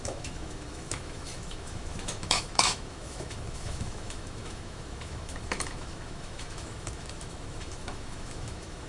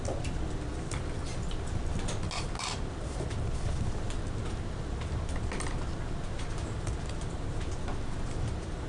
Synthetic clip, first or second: first